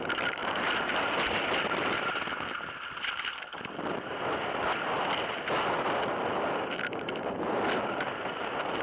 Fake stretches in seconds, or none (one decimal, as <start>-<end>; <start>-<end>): none